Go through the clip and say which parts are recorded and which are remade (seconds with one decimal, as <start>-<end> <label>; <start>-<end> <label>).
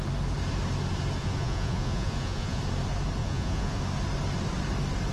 0.0-1.2 recorded; 1.2-2.6 remade; 2.6-3.2 recorded; 3.2-3.8 remade; 3.8-5.1 recorded